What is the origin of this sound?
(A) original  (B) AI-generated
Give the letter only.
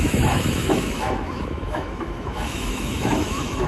B